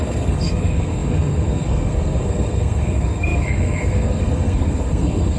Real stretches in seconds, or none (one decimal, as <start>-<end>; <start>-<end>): none